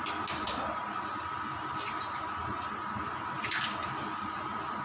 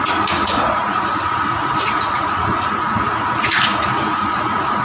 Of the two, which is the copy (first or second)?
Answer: second